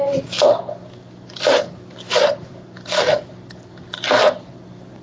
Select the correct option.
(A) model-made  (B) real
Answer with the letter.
B